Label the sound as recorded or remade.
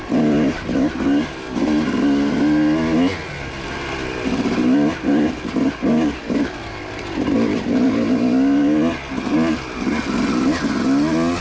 recorded